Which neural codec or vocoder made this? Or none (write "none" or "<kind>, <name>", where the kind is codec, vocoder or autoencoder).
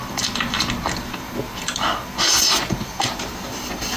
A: none